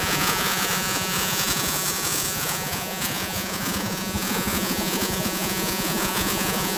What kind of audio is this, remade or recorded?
remade